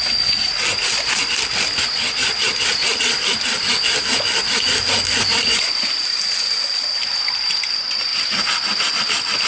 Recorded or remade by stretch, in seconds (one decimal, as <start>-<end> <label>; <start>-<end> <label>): 0.0-9.5 recorded